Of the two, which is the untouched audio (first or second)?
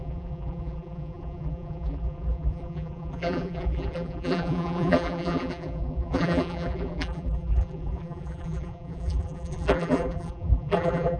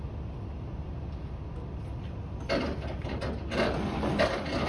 second